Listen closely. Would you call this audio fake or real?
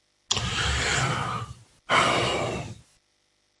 real